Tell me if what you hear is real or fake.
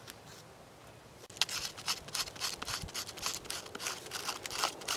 real